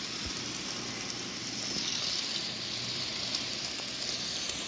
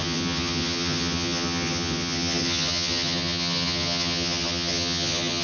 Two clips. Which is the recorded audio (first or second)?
first